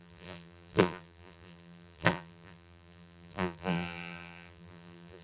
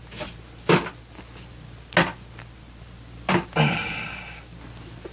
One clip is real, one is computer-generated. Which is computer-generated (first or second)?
first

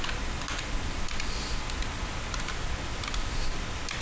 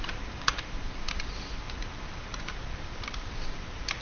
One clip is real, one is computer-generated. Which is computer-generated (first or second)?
second